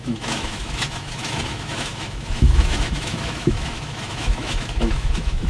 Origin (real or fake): fake